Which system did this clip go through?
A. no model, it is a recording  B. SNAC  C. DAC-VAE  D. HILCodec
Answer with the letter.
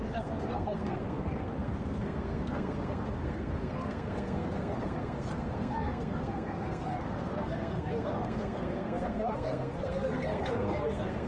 B